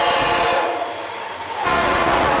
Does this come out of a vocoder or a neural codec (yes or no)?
yes